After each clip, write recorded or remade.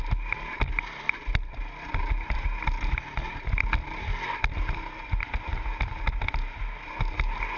recorded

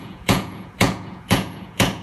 remade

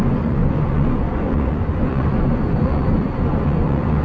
remade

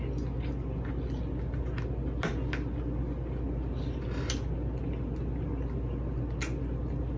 recorded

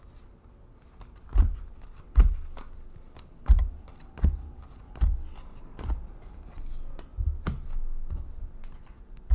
recorded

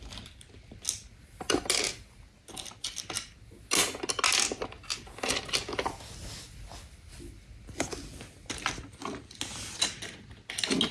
recorded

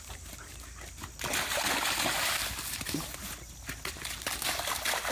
recorded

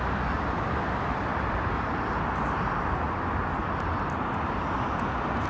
recorded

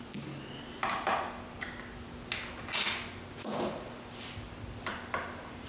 recorded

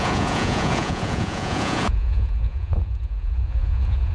remade